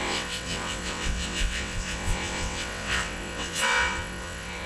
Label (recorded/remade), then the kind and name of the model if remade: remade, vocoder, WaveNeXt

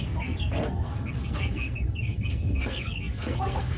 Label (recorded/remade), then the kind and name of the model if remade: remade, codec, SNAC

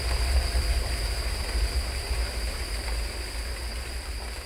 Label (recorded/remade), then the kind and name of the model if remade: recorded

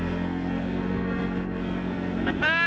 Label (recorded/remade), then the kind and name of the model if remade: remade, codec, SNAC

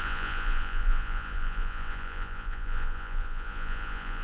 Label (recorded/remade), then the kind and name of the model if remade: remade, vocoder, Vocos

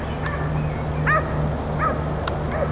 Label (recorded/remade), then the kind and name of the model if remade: recorded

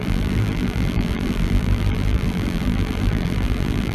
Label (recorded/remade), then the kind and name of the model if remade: remade, vocoder, BigVGAN v2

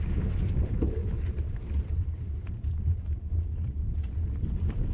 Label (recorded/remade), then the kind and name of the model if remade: remade, vocoder, BigVGAN v2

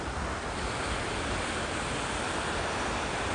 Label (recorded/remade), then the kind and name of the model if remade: recorded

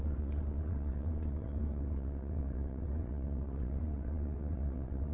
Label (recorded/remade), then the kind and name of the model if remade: remade, vocoder, WaveNeXt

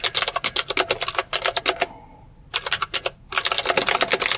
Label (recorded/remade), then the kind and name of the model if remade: recorded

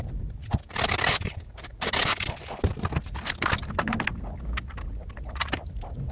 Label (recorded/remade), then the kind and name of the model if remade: recorded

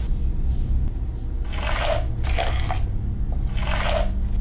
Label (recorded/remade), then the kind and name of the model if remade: recorded